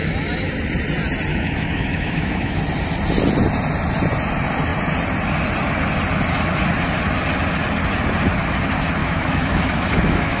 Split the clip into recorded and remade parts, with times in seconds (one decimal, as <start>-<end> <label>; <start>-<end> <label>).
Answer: 0.0-0.5 remade; 0.5-1.3 recorded; 1.3-2.6 remade; 2.6-9.0 recorded; 9.0-10.4 remade